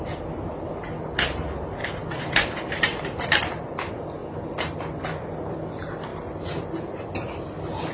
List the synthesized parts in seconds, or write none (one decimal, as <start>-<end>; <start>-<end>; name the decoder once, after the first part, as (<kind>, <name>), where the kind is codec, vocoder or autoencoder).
1.8-3.4 (vocoder, BigVGAN v2); 6.1-6.7